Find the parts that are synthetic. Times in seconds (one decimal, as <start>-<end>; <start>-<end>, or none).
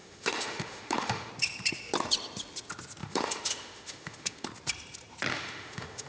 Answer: 0.0-1.3; 3.0-4.5; 5.3-6.1